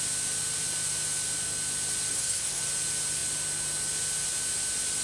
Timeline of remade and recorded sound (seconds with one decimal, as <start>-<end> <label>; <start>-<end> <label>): 0.0-2.1 recorded; 2.1-2.6 remade; 2.6-5.0 recorded